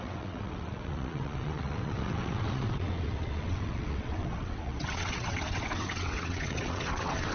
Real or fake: fake